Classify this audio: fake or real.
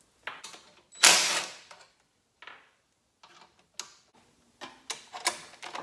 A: real